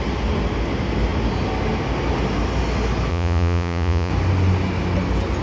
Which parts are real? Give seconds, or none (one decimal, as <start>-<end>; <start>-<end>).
0.0-3.1; 4.1-5.4